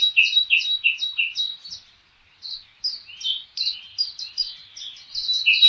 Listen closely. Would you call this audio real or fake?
real